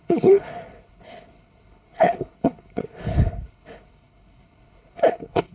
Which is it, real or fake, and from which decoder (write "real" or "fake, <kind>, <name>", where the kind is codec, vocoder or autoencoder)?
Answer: fake, codec, HILCodec